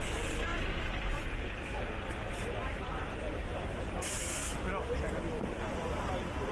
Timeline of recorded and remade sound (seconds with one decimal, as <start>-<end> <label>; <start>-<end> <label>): 0.0-4.4 remade; 4.4-5.7 recorded; 5.7-6.5 remade